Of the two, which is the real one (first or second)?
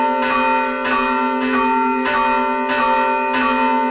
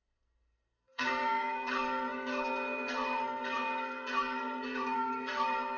first